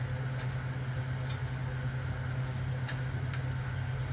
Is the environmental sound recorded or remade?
recorded